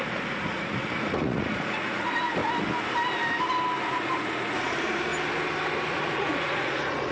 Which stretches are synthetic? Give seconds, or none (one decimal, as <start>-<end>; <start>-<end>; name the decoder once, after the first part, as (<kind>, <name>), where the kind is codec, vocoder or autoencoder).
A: 0.0-2.4 (vocoder, Vocos); 3.9-5.1; 5.9-7.1